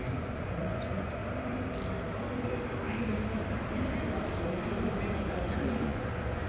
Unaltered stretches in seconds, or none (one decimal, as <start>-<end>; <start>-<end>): 1.2-5.1